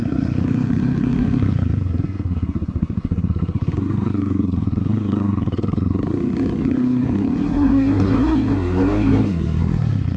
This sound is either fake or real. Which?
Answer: fake